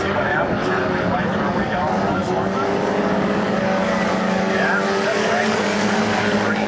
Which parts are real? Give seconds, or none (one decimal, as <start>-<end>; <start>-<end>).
none